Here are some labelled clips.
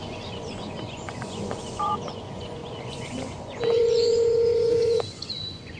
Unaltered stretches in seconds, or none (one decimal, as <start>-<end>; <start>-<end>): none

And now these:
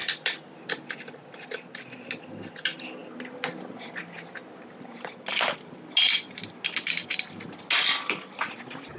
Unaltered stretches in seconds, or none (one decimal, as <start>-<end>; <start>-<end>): 0.0-9.0

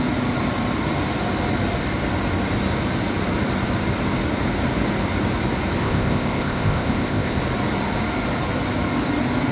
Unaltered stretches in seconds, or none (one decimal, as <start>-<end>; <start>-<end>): 0.0-5.8; 7.4-9.5

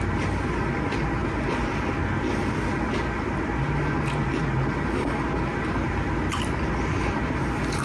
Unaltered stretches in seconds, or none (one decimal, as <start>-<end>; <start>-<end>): 0.0-7.8